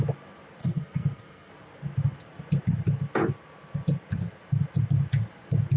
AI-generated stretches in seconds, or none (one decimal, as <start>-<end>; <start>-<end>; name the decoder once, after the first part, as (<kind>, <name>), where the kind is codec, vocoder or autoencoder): 0.6-1.5 (codec, SNAC)

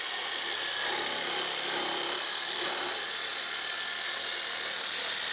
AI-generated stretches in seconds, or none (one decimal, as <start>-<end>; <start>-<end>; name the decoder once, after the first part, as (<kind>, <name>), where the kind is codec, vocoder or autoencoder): none

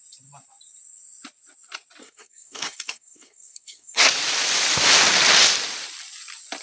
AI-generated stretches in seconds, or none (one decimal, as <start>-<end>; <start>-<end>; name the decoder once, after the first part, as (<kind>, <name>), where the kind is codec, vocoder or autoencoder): 2.0-4.1 (codec, SNAC)

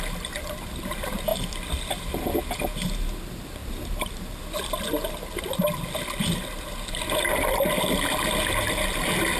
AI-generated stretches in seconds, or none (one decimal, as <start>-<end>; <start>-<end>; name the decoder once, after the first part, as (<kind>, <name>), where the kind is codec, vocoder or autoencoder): 3.6-4.4 (vocoder, BigVGAN v2)